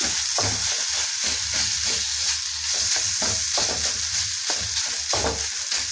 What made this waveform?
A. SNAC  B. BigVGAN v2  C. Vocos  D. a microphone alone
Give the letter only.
D